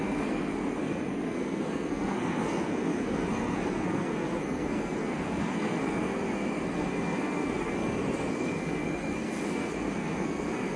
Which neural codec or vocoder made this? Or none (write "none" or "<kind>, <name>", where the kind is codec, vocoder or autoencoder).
codec, SNAC